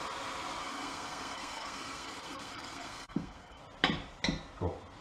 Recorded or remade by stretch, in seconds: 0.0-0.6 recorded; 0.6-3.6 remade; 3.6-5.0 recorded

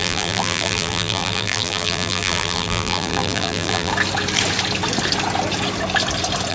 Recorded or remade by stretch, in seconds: 0.0-3.9 remade; 3.9-6.5 recorded